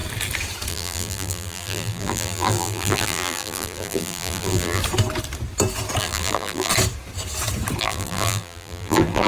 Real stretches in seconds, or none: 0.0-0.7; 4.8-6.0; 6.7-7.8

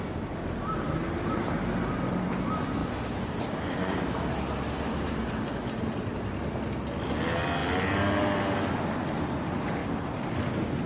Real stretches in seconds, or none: 0.0-2.8; 5.3-9.8; 10.3-10.9

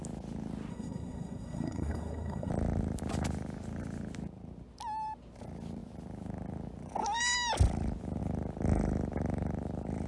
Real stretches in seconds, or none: 0.0-0.7; 2.5-10.1

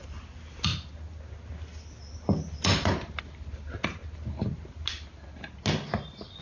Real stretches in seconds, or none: 0.0-6.4

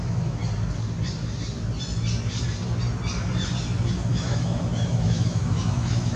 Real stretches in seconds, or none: 0.4-4.1

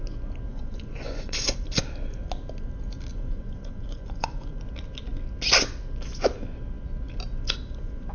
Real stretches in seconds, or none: 0.0-0.5; 1.6-3.1; 4.6-8.1